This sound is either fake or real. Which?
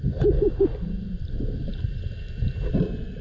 real